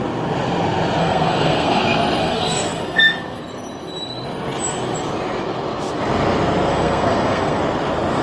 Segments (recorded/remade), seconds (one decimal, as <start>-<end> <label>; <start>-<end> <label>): 0.0-1.0 recorded; 1.0-1.8 remade; 1.8-2.2 recorded; 2.2-3.4 remade; 3.4-6.7 recorded; 6.7-7.6 remade; 7.6-8.2 recorded